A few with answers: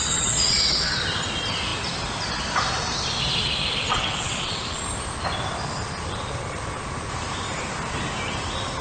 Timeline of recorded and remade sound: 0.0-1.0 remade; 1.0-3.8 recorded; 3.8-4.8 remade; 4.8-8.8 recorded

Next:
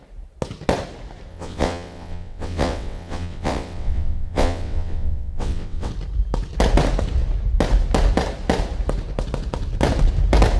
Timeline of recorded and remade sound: 0.0-1.3 recorded; 1.3-5.9 remade; 5.9-10.6 recorded

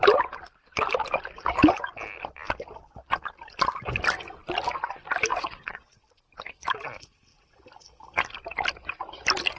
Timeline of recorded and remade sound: 0.0-5.3 recorded; 5.3-6.0 remade; 6.0-9.6 recorded

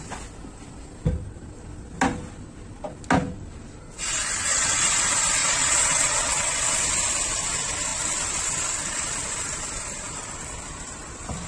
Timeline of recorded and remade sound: 0.0-4.5 recorded; 4.5-5.0 remade; 5.0-5.4 recorded; 5.4-6.9 remade; 6.9-11.5 recorded

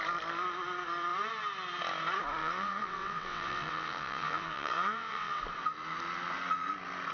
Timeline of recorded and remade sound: 0.0-2.4 recorded; 2.4-5.4 remade; 5.4-7.1 recorded